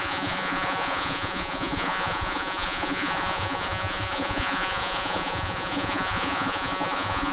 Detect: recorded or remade remade